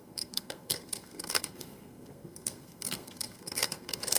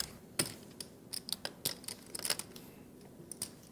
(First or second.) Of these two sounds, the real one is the second